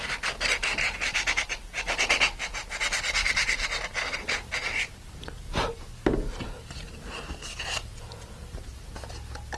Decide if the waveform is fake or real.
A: real